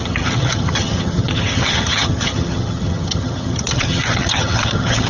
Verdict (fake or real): fake